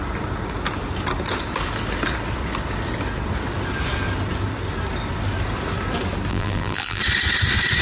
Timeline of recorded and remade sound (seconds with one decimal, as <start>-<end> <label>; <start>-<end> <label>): 0.0-6.3 recorded; 6.3-7.0 remade; 7.0-7.8 recorded